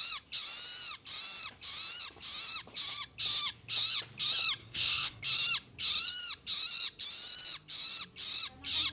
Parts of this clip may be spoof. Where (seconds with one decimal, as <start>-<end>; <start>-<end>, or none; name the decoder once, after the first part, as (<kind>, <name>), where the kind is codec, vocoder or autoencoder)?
4.6-5.2 (codec, SNAC)